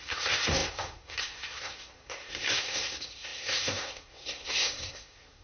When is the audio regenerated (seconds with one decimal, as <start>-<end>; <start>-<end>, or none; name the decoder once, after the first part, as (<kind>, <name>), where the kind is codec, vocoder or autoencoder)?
0.0-5.4 (codec, SNAC)